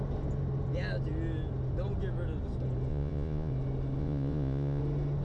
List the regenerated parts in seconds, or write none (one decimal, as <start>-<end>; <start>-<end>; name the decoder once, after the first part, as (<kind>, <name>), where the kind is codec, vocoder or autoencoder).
2.9-3.5 (vocoder, Vocos); 4.0-4.8